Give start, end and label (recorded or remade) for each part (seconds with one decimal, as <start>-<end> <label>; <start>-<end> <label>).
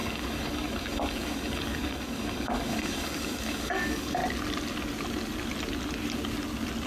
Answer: 0.0-4.2 remade; 4.2-6.9 recorded